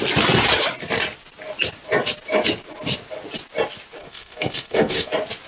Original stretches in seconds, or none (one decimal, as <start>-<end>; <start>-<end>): 0.0-4.0; 5.1-5.5